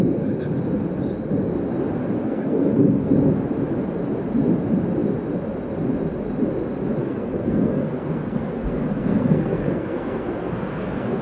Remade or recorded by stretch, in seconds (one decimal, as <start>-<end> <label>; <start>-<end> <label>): 0.0-2.2 recorded; 2.2-3.1 remade; 3.1-7.0 recorded; 7.0-11.2 remade